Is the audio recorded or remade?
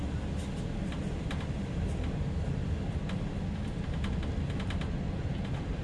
recorded